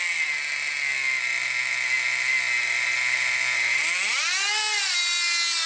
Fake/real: real